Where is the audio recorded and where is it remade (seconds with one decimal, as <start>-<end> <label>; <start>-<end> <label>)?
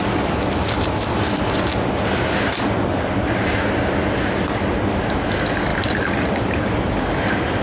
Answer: 0.0-5.7 recorded; 5.7-7.1 remade; 7.1-7.6 recorded